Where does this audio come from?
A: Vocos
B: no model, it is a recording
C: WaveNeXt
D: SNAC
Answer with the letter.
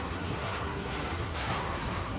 D